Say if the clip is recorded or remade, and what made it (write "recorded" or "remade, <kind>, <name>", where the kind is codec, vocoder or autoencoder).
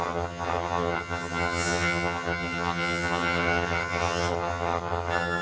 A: remade, vocoder, HiFi-GAN